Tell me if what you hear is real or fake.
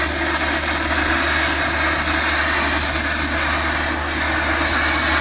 real